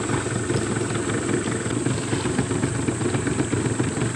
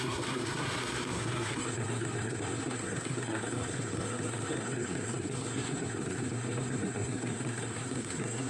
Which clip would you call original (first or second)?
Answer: first